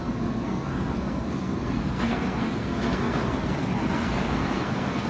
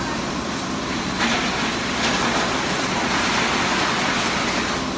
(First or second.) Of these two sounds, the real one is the second